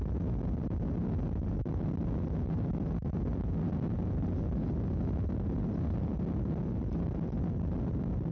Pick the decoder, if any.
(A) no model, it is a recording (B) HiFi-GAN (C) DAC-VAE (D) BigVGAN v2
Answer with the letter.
A